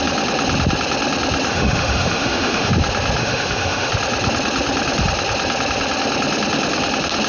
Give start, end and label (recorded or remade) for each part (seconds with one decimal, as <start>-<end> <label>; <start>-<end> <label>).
0.0-1.5 recorded; 1.5-2.7 remade; 2.7-3.2 recorded; 3.2-3.9 remade; 3.9-7.3 recorded